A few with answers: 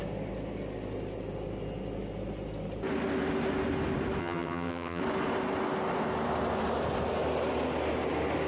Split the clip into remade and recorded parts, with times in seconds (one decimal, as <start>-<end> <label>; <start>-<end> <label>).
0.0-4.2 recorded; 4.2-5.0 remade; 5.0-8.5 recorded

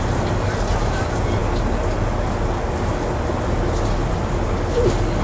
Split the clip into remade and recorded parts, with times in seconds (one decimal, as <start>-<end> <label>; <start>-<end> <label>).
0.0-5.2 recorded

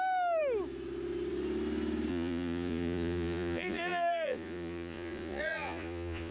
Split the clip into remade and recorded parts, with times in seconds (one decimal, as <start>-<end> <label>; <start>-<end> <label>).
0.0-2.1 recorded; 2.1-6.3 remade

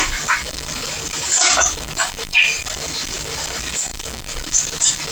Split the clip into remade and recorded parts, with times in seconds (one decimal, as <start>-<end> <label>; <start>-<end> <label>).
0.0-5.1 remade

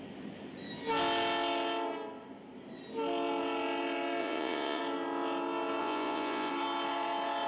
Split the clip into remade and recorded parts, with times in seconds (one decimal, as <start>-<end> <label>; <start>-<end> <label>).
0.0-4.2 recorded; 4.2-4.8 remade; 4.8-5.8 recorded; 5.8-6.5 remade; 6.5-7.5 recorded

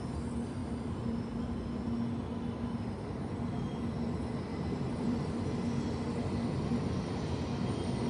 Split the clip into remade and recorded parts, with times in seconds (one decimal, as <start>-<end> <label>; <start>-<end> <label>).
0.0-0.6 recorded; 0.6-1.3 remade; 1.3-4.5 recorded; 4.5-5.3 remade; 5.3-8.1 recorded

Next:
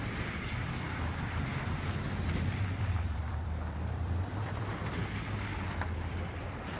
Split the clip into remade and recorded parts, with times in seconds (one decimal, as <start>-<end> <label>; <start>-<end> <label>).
0.0-1.5 remade; 1.5-2.7 recorded; 2.7-5.0 remade; 5.0-6.1 recorded; 6.1-6.8 remade